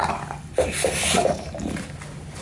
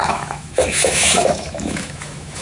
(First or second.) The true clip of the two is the first